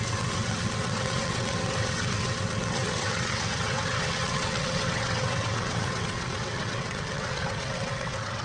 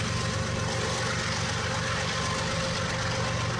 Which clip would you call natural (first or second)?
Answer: second